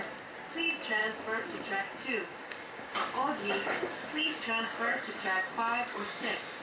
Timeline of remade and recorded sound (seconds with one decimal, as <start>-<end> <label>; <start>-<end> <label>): 0.0-1.0 recorded; 1.0-1.8 remade; 1.8-2.3 recorded; 2.3-6.6 remade